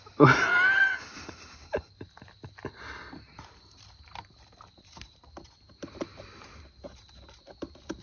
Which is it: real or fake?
real